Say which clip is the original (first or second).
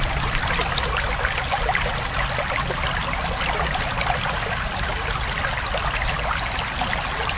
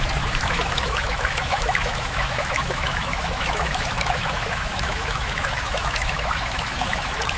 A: first